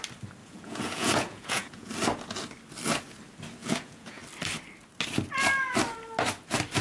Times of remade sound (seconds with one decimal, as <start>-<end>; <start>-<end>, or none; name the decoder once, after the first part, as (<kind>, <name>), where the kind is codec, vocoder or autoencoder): 0.4-1.9 (vocoder, Vocos); 3.6-4.2